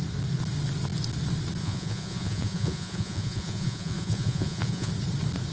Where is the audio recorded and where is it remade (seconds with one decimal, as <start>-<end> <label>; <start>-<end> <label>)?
0.0-1.6 recorded; 1.6-4.9 remade; 4.9-5.5 recorded